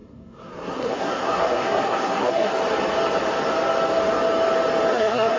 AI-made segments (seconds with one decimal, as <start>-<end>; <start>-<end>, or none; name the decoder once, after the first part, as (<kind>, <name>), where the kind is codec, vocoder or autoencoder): 0.0-2.5 (codec, SNAC); 4.9-5.4